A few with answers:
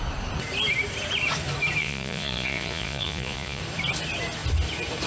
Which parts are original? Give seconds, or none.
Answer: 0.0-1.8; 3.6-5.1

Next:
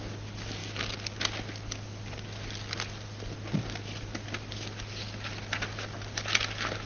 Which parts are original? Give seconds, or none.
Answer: 0.0-6.9

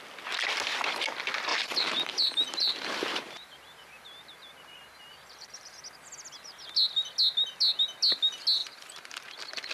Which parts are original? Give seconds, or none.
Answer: 0.0-1.5; 5.8-8.6

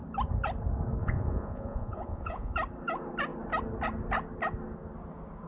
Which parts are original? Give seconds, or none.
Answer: 0.0-1.0; 2.5-5.5

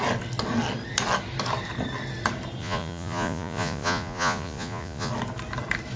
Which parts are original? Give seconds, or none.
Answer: 0.0-2.6; 5.1-6.0

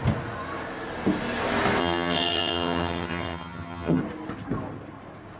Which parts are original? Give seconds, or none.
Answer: 0.0-1.8; 4.0-5.4

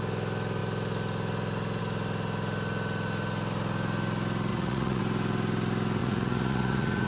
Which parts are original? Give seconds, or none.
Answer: 0.0-4.5; 5.0-6.0